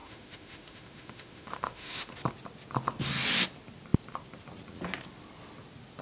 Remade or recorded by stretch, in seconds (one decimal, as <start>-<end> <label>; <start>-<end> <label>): 0.0-2.1 remade; 2.1-6.0 recorded

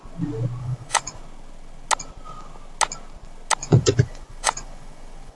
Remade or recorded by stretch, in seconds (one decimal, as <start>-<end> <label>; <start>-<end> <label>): 0.0-0.6 recorded; 0.6-1.2 remade; 1.2-3.6 recorded; 3.6-5.4 remade

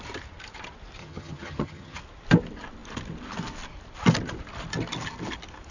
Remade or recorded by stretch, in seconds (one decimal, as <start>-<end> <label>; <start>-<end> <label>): 0.0-1.0 recorded; 1.0-2.0 remade; 2.0-5.7 recorded

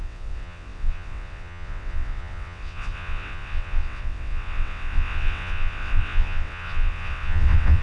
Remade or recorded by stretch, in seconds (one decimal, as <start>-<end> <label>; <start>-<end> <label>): 0.0-7.8 remade

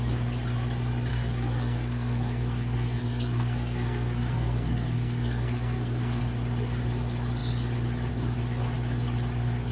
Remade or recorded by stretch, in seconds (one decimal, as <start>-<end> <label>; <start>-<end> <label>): 0.0-1.1 recorded; 1.1-6.2 remade; 6.2-9.7 recorded

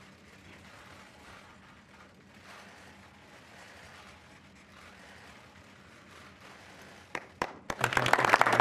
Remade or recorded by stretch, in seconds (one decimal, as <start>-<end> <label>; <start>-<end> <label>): 0.0-8.6 recorded